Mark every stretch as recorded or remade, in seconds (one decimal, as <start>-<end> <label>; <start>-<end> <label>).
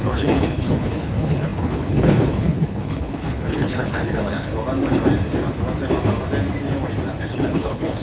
0.0-4.5 remade; 4.5-7.2 recorded; 7.2-8.0 remade